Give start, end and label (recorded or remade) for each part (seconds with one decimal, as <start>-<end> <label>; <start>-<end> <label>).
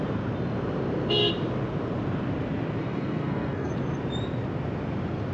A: 0.0-2.8 recorded; 2.8-3.7 remade; 3.7-5.3 recorded